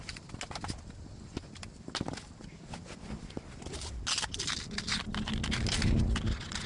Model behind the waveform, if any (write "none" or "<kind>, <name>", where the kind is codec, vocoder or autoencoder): none